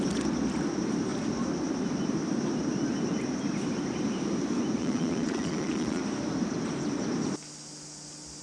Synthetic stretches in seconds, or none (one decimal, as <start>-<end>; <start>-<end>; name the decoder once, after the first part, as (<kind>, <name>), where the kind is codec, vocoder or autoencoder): 4.8-6.0 (vocoder, Vocos)